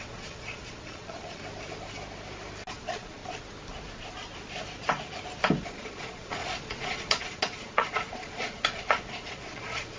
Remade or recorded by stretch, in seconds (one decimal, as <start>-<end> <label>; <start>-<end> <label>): 0.0-1.4 remade; 1.4-2.7 recorded; 2.7-3.2 remade; 3.2-5.6 recorded; 5.6-10.0 remade